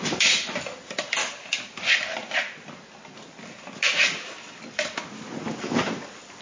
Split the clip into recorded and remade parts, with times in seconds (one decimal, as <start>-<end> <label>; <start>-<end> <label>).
0.0-6.4 recorded